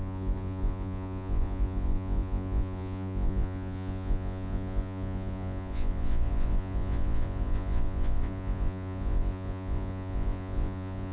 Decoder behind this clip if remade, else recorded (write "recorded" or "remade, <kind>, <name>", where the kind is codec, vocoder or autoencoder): remade, vocoder, Vocos